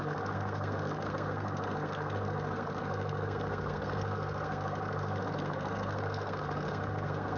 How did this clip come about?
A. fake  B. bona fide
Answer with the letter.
A